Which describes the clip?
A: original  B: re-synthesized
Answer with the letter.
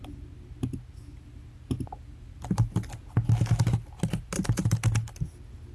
A